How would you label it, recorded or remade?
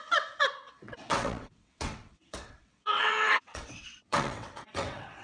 remade